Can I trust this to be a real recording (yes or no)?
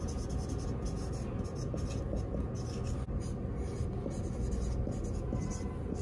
yes